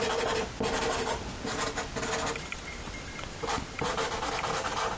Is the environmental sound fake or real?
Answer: real